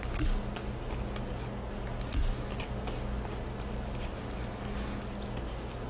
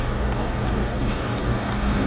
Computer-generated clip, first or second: second